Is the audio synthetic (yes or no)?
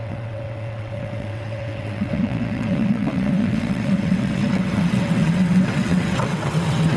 yes